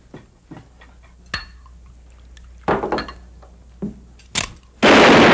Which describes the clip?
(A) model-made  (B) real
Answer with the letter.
B